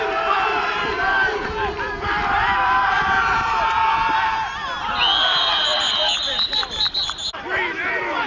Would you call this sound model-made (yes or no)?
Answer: yes